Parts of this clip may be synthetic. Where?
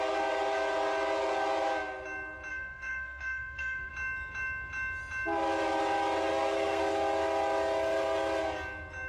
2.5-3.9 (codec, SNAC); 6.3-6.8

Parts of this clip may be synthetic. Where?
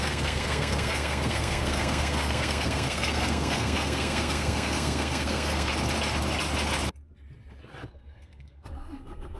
0.0-5.7 (codec, SNAC); 7.9-9.4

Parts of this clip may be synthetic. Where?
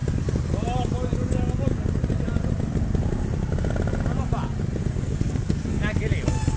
4.9-5.8 (codec, SNAC)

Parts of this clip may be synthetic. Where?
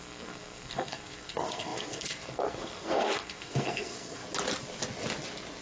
0.0-4.2 (codec, SNAC)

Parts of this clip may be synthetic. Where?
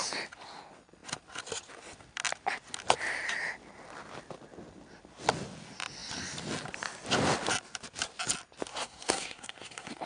8.7-10.1 (codec, SNAC)